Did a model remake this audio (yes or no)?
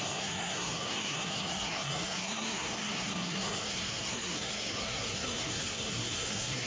yes